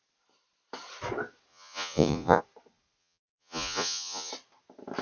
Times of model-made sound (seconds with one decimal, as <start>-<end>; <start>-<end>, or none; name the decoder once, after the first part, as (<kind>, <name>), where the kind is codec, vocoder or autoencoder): 1.5-2.4 (vocoder, Vocos); 3.0-4.3